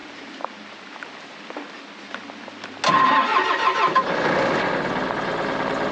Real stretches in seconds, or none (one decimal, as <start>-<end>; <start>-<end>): 0.0-5.9